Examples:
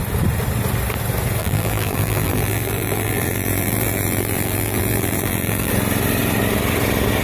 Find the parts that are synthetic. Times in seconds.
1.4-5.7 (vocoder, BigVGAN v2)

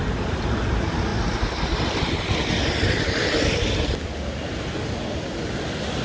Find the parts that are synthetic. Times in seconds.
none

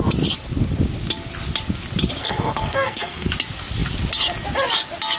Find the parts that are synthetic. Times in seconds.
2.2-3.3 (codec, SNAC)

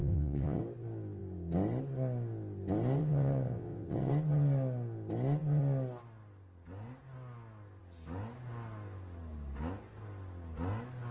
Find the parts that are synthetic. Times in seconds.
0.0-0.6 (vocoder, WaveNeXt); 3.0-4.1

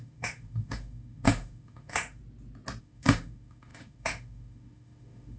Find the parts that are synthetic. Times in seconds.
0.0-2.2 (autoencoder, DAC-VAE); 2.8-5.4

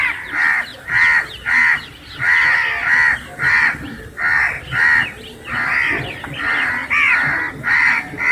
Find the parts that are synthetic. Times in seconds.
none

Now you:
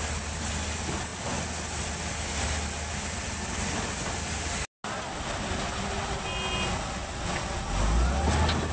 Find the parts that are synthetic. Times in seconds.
none